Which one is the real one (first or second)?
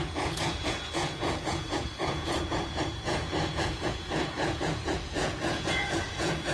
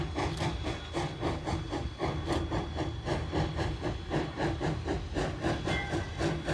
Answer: second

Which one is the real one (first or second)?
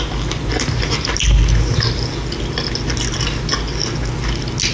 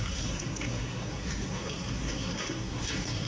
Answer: first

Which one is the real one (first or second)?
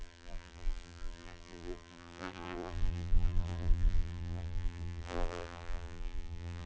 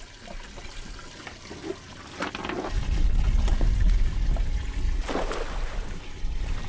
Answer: second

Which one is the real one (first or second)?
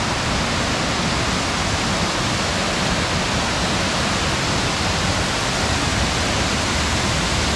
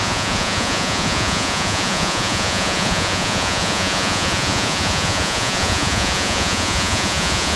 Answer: first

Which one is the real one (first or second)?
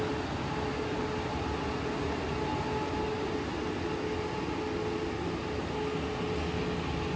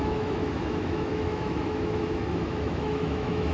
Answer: first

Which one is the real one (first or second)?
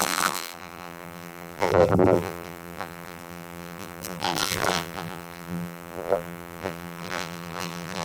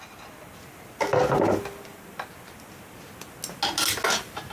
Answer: second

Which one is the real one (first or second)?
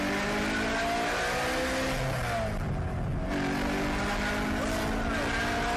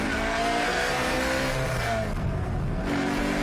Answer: first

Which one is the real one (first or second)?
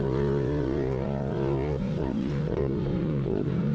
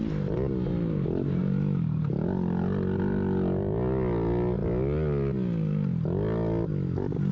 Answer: second